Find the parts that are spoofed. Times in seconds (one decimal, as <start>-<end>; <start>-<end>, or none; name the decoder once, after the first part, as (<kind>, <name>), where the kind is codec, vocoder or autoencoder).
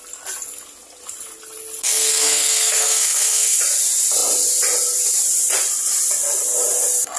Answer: 1.8-3.6 (codec, SNAC)